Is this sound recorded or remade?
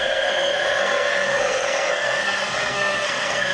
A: remade